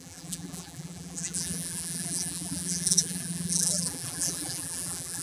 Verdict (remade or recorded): remade